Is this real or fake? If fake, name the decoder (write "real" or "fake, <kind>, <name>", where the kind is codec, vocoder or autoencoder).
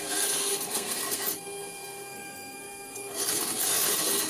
fake, codec, SNAC